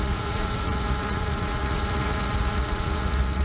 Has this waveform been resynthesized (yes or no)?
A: yes